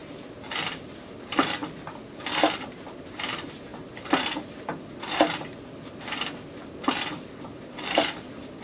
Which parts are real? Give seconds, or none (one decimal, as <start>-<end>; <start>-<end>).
0.0-0.7; 3.7-6.9